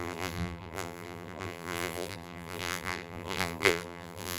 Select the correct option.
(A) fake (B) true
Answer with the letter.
A